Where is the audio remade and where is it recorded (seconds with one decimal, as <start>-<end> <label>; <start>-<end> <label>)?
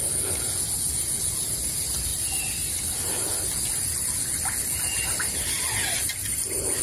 0.0-2.1 recorded; 2.1-3.0 remade; 3.0-5.8 recorded; 5.8-6.8 remade